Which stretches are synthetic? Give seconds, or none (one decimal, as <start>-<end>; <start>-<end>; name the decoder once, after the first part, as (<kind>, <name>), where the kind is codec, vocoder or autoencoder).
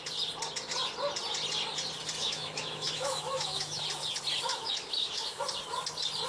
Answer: 2.2-3.8 (autoencoder, DAC-VAE); 4.5-5.4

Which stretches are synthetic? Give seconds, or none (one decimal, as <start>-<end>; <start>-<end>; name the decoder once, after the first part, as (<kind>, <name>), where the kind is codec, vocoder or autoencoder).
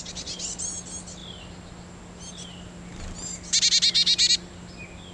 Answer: none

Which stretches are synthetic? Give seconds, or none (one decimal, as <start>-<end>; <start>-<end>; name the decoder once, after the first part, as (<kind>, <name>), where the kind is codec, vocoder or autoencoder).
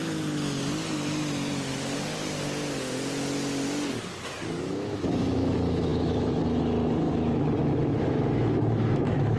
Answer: 4.6-9.4 (autoencoder, DAC-VAE)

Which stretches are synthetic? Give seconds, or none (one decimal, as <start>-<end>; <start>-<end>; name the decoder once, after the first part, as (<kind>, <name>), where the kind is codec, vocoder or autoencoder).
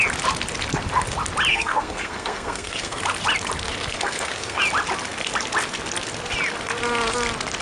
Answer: 1.5-3.0 (codec, SNAC); 3.9-4.6